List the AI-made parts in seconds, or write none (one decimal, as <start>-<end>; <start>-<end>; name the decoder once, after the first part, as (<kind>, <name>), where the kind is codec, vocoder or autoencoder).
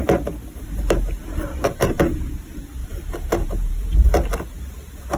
0.0-2.0 (vocoder, BigVGAN v2); 2.8-4.1